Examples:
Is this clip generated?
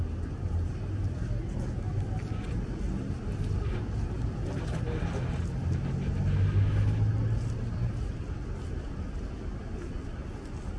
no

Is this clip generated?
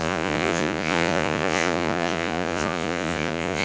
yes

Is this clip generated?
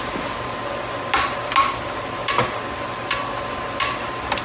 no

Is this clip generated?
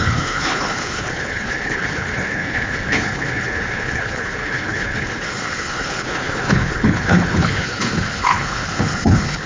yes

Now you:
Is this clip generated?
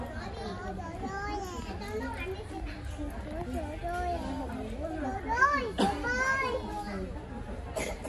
no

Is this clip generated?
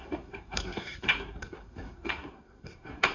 yes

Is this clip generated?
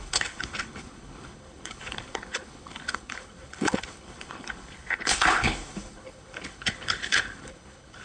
yes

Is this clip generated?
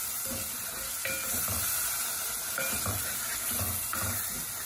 no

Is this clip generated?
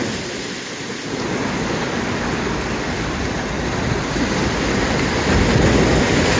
no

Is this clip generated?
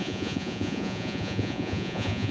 yes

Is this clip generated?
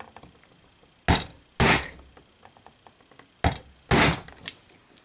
no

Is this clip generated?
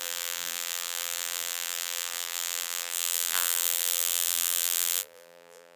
yes